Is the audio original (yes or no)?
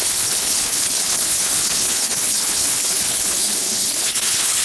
no